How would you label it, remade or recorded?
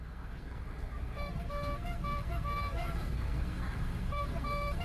remade